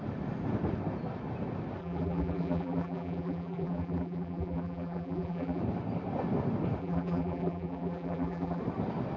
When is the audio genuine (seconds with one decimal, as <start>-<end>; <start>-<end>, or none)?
0.0-1.8; 5.6-6.8; 8.6-9.2